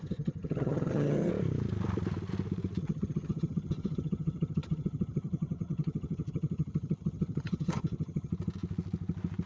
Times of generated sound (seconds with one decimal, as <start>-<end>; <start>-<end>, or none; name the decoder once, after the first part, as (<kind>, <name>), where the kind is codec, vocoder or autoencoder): 0.0-1.3 (vocoder, HiFi-GAN); 2.8-8.3